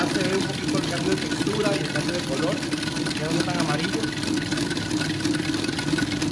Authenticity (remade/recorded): recorded